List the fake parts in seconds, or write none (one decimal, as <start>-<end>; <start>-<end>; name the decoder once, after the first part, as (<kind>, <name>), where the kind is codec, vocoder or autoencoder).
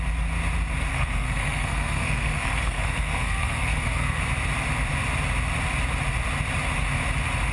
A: 0.9-4.2 (codec, SNAC)